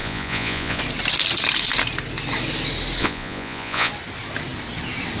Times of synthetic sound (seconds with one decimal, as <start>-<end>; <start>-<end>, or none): 0.0-0.8; 3.0-3.9